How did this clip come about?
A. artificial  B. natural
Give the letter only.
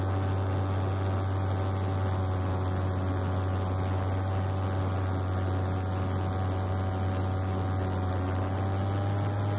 B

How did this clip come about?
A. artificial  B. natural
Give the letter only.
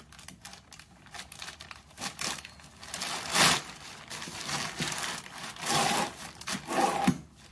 B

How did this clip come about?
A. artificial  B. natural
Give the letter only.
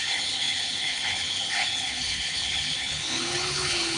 A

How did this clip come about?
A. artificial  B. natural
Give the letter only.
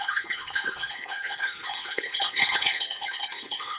A